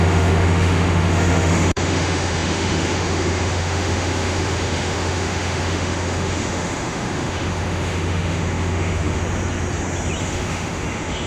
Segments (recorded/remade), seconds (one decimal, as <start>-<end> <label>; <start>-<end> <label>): 0.0-9.2 remade; 9.2-10.2 recorded; 10.2-11.3 remade